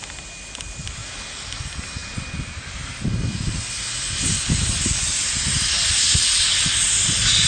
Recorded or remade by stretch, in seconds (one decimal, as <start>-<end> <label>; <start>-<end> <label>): 0.0-7.5 recorded